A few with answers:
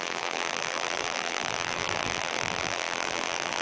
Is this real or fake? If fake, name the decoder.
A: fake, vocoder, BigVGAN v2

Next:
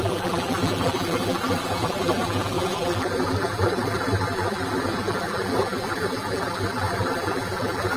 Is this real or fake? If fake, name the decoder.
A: fake, vocoder, BigVGAN v2